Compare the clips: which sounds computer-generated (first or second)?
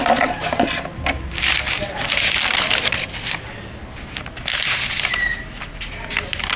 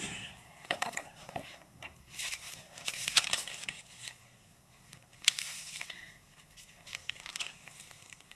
second